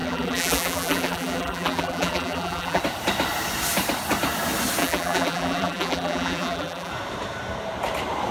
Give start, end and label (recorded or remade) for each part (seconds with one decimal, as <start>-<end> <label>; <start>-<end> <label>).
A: 0.0-2.8 remade; 2.8-4.8 recorded; 4.8-6.9 remade; 6.9-8.3 recorded